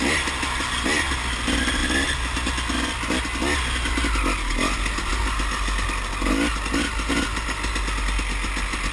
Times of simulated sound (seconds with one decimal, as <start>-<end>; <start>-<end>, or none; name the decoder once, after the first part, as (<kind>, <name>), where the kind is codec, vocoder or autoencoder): none